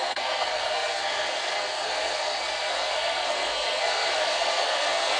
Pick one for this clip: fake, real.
fake